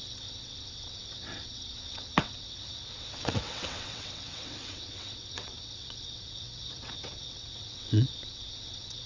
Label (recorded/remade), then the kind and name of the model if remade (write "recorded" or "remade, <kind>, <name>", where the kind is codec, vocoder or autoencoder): remade, vocoder, WaveNeXt